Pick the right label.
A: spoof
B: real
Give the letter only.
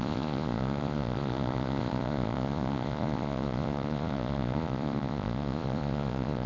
A